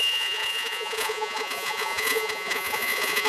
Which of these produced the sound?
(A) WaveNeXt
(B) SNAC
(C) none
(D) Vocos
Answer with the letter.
D